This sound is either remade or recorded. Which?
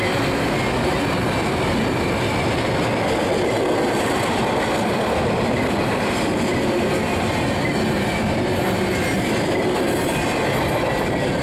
recorded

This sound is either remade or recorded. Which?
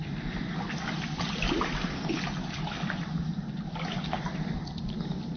recorded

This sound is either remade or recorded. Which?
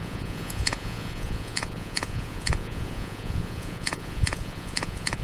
remade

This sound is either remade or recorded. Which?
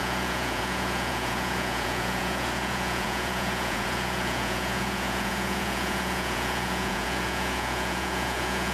remade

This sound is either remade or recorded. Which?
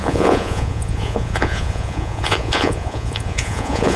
remade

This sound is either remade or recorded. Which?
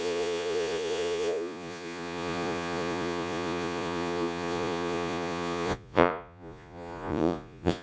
remade